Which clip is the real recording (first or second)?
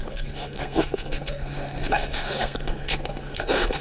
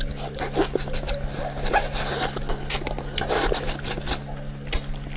second